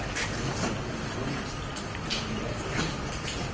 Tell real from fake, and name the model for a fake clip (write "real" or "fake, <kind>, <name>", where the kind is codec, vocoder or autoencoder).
real